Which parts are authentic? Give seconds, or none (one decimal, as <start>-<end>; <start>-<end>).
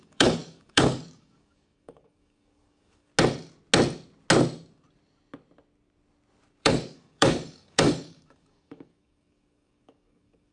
3.1-6.6